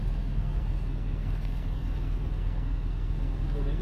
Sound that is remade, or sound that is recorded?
remade